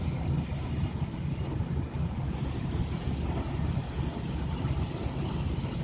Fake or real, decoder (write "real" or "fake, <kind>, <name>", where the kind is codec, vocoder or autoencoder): real